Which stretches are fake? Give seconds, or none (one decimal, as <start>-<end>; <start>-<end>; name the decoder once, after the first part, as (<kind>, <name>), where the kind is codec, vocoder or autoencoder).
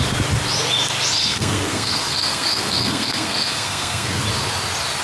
1.2-4.2 (codec, SNAC)